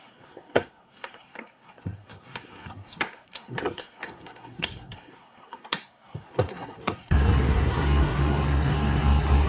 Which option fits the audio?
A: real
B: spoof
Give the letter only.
B